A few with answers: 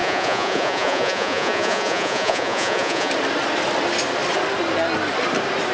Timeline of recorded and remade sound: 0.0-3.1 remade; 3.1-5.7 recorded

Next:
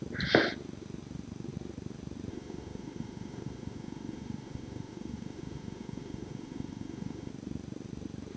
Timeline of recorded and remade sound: 0.0-2.3 recorded; 2.3-7.3 remade; 7.3-8.4 recorded

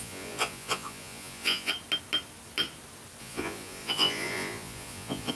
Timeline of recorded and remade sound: 0.0-1.7 remade; 1.7-3.2 recorded; 3.2-5.3 remade

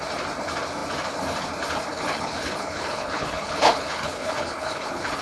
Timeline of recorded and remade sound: 0.0-1.9 recorded; 1.9-5.2 remade

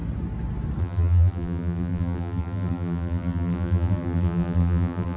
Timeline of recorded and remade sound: 0.0-0.8 recorded; 0.8-5.2 remade

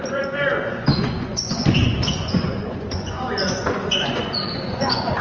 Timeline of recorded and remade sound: 0.0-5.2 remade

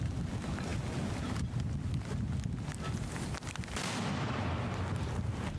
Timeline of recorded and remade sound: 0.0-5.6 recorded